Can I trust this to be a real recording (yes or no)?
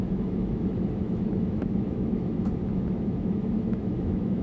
no